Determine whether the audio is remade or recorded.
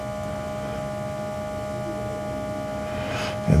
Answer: recorded